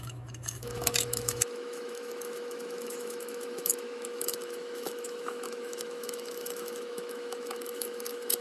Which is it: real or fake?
fake